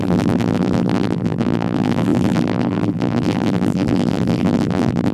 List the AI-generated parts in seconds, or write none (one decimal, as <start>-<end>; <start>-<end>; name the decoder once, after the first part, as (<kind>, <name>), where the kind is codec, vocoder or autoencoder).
0.0-5.1 (vocoder, BigVGAN v2)